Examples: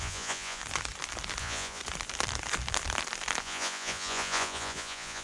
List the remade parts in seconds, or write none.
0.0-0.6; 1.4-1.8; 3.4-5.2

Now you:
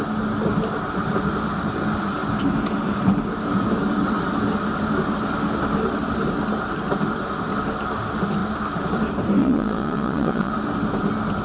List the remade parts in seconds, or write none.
9.4-10.5

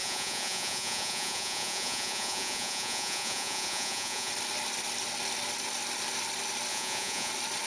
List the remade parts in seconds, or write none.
0.0-4.3; 6.7-7.3

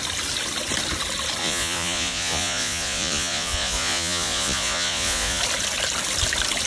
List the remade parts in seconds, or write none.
1.4-5.4

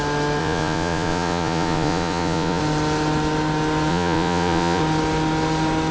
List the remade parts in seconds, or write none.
0.4-2.6; 3.9-4.8

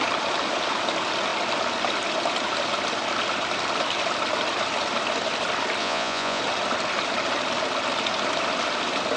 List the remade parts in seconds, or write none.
5.8-6.4

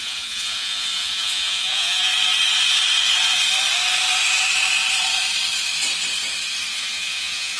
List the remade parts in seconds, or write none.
0.0-2.1; 6.7-7.6